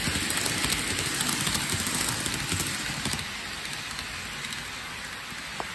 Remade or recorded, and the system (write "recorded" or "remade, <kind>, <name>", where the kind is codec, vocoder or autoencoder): recorded